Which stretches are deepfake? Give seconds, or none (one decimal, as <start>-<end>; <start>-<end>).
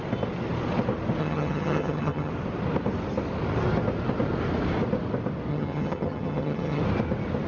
1.2-2.3; 5.5-6.8